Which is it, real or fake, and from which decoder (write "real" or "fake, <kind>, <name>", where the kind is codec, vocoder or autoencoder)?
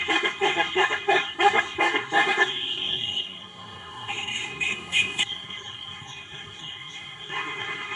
fake, codec, SNAC